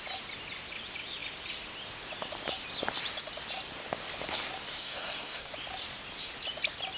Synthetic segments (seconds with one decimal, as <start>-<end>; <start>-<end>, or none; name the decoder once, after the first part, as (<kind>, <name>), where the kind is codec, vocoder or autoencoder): 4.8-5.5 (codec, SNAC)